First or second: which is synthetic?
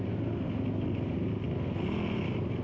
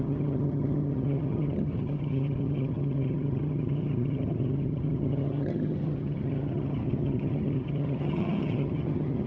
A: second